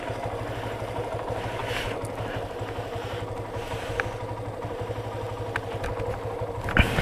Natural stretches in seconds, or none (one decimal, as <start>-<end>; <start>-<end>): 0.0-7.0